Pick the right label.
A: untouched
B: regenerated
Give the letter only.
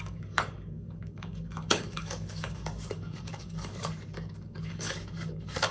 B